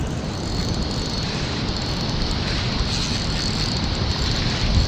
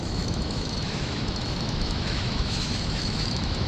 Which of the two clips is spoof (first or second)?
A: second